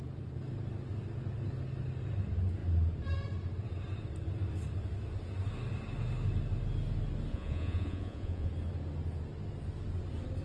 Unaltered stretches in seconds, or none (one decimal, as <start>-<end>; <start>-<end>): 0.0-7.3; 8.5-10.4